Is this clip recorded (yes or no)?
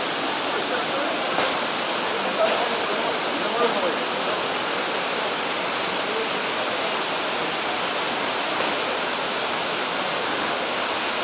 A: yes